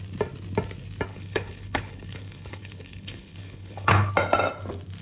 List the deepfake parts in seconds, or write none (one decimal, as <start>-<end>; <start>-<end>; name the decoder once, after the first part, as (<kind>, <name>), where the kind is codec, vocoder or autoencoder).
1.1-4.1 (codec, HILCodec)